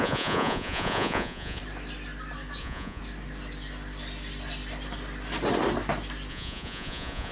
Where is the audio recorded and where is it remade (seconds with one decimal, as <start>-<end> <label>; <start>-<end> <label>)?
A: 0.0-1.6 remade; 1.6-2.6 recorded; 2.6-3.0 remade; 3.0-6.3 recorded; 6.3-7.3 remade